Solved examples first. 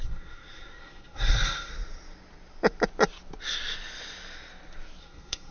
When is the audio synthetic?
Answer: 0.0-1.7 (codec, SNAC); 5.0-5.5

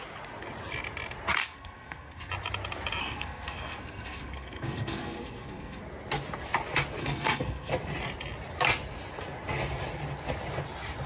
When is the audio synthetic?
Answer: 1.4-2.3 (codec, SNAC); 3.0-5.8; 7.0-7.7

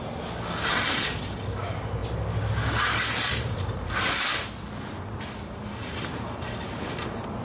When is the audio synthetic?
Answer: 0.0-2.0 (vocoder, BigVGAN v2); 3.3-4.3; 6.1-7.4